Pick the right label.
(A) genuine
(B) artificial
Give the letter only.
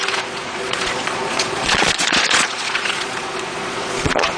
B